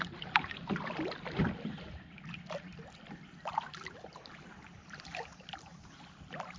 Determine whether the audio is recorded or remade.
recorded